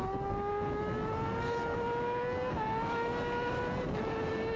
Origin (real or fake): real